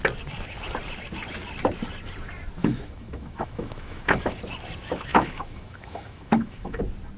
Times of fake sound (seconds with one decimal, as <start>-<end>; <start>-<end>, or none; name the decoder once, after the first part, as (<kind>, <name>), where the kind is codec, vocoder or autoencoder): 2.6-4.4 (autoencoder, DAC-VAE); 5.1-6.8